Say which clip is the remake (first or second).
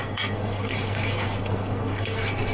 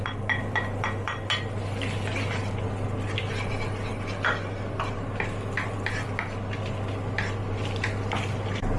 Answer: first